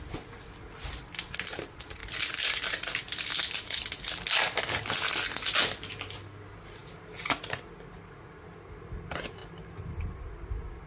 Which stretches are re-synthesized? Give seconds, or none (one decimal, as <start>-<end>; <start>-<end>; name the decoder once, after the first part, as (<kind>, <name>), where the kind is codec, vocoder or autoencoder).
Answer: none